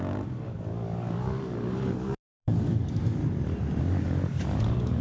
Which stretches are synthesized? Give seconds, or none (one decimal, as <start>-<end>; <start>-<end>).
0.0-3.2; 3.8-5.0